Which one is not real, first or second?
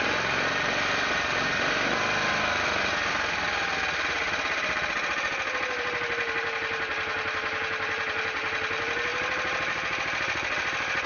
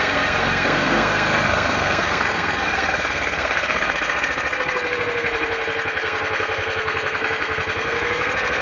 second